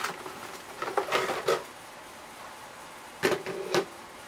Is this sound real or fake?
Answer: real